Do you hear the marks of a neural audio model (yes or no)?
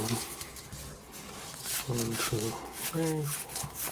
no